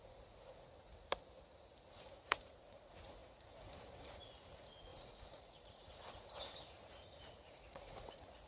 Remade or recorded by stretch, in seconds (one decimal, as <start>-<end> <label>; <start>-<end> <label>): 0.0-0.9 remade; 0.9-1.9 recorded; 1.9-8.5 remade